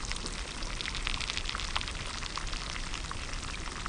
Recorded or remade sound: recorded